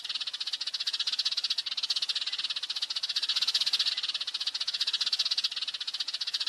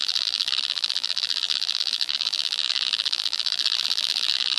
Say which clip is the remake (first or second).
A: second